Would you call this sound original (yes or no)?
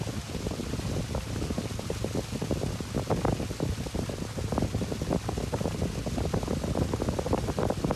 yes